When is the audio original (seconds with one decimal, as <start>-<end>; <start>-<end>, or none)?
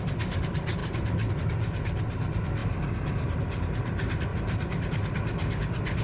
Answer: 0.0-6.0